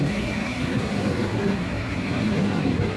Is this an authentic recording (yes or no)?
no